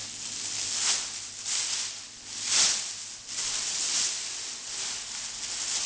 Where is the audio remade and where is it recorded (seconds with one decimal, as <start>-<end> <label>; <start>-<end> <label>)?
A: 0.0-5.9 recorded